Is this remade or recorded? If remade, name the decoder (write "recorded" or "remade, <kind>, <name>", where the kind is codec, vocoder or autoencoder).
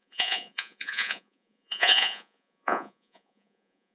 remade, vocoder, Vocos